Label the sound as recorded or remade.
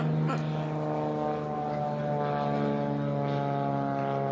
recorded